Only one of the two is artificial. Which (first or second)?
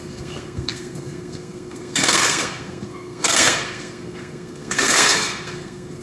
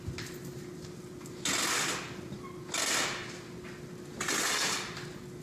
first